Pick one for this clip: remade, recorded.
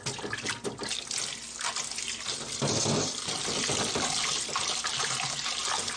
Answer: recorded